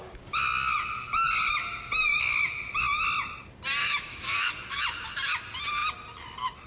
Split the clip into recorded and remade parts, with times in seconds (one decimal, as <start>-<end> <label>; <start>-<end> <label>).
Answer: 0.0-3.8 recorded; 3.8-4.5 remade; 4.5-6.7 recorded